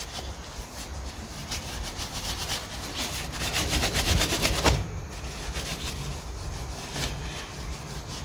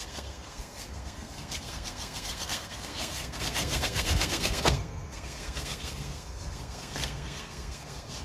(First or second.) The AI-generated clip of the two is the second